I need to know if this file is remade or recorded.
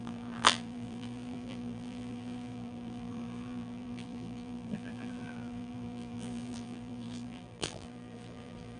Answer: remade